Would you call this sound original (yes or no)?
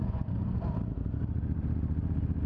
yes